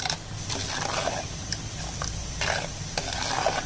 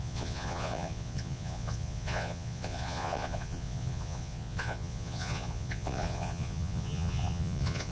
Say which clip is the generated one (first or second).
second